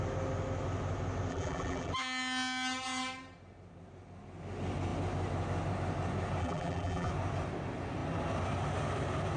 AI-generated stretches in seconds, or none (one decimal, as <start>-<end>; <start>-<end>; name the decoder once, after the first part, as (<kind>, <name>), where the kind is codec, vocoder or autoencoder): 1.3-1.9 (vocoder, BigVGAN v2); 6.4-7.1